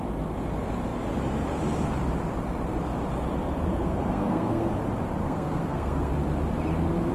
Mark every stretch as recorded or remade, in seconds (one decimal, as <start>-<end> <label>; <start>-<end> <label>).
0.0-3.7 recorded; 3.7-4.7 remade; 4.7-5.2 recorded; 5.2-6.1 remade; 6.1-7.1 recorded